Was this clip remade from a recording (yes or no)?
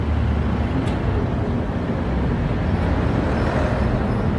no